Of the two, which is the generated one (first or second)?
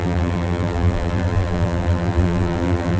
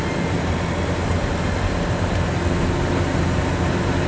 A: first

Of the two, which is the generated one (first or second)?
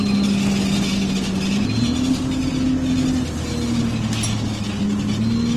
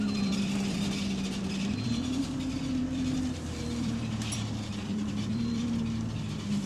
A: second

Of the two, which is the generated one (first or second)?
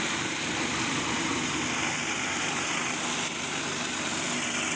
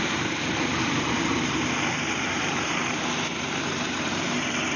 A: second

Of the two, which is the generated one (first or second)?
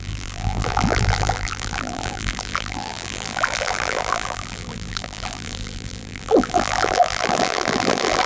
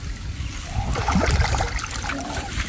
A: first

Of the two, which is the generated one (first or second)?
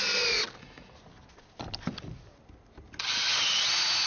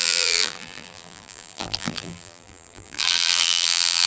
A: second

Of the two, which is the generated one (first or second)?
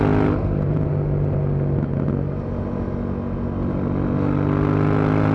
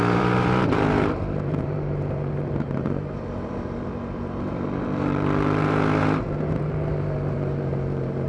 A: second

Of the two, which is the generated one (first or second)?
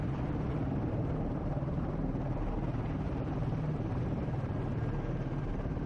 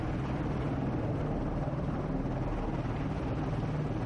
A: first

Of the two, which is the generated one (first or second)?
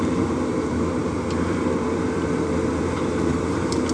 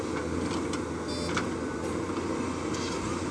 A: first